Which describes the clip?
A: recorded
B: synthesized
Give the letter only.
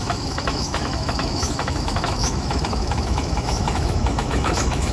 B